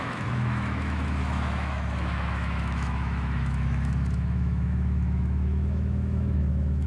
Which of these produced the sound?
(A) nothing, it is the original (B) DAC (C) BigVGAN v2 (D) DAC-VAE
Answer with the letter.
D